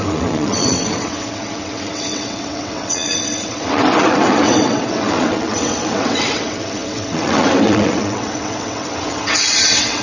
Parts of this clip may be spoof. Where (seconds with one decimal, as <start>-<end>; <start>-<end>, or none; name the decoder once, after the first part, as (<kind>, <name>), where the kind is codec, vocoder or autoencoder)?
0.0-10.0 (vocoder, WaveNeXt)